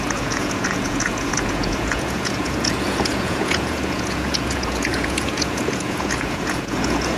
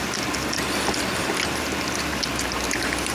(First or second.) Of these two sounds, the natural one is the second